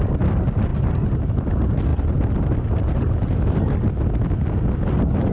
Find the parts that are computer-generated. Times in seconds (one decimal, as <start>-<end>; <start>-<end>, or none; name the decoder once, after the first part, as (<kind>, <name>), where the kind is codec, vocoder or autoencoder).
none